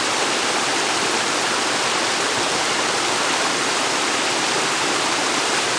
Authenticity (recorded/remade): recorded